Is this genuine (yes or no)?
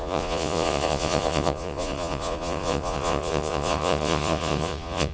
no